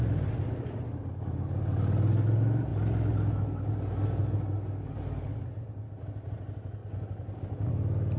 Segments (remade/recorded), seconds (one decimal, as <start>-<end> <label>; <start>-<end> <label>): 0.0-8.2 recorded

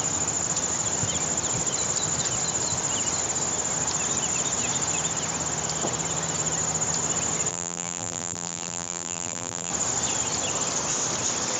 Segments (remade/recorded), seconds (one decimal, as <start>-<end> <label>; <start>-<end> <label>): 0.0-7.5 recorded; 7.5-9.7 remade; 9.7-11.6 recorded

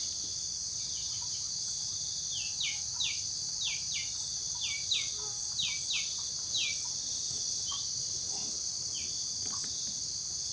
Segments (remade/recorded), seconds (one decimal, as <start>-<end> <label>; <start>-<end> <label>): 0.0-10.5 recorded

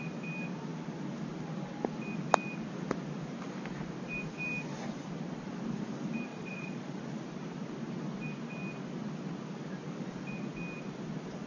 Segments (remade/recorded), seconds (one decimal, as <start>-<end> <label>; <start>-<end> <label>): 0.0-6.3 recorded; 6.3-7.0 remade; 7.0-11.5 recorded

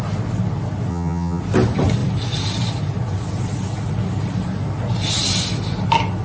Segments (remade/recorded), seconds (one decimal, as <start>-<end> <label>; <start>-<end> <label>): 0.0-0.9 recorded; 0.9-1.4 remade; 1.4-6.2 recorded